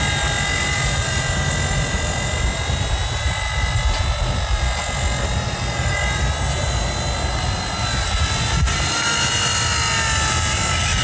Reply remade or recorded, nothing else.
recorded